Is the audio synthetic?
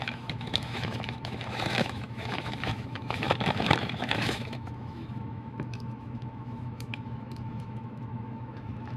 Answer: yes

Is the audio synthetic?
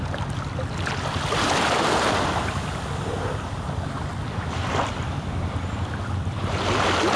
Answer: no